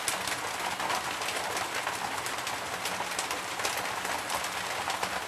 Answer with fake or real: real